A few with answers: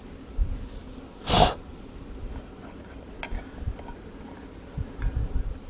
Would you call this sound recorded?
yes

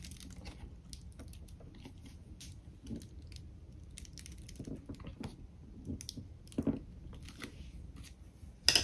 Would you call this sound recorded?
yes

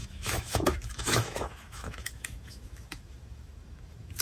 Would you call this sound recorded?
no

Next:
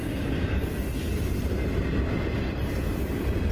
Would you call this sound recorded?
yes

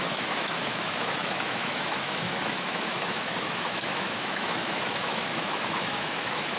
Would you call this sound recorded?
no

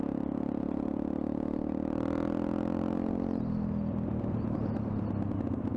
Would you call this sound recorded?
yes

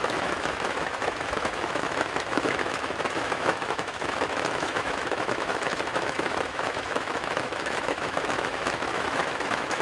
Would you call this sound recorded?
no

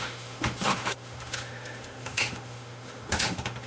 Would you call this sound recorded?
no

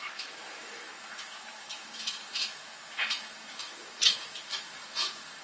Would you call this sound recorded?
no